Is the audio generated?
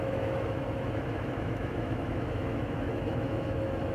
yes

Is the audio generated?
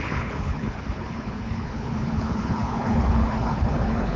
yes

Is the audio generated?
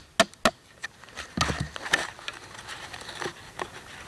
no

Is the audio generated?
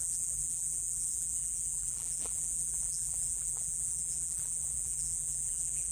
yes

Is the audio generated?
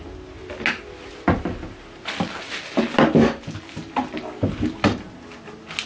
no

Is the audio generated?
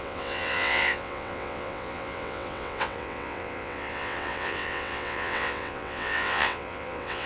yes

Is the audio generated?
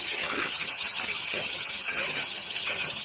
yes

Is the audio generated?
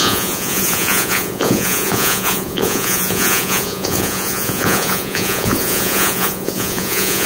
yes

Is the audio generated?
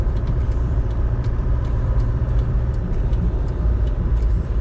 yes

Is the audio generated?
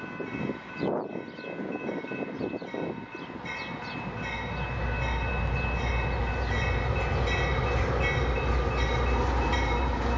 no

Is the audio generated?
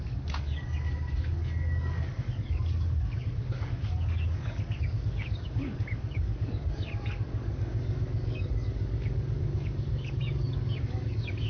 yes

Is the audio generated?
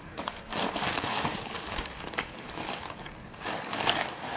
yes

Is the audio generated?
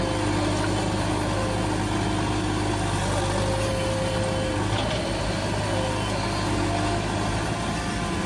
no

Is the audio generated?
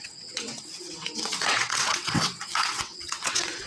yes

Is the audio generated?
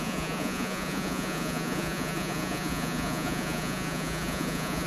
yes